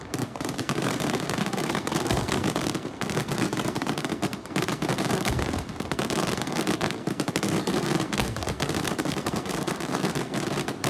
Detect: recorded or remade remade